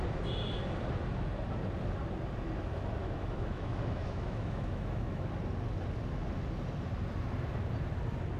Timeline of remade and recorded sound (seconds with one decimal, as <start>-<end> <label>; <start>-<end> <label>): 0.0-3.0 recorded; 3.0-5.3 remade; 5.3-8.4 recorded